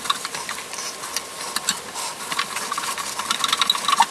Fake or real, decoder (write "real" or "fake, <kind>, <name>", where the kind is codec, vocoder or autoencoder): real